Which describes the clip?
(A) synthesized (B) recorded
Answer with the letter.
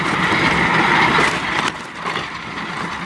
B